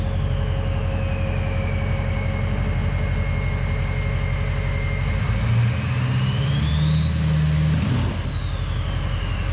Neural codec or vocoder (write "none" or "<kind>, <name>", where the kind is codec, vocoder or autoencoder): none